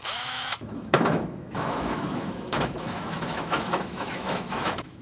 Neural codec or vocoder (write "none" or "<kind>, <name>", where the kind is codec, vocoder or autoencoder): autoencoder, DAC-VAE